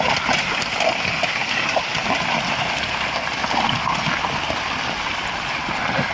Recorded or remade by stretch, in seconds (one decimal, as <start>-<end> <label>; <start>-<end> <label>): 0.0-6.1 recorded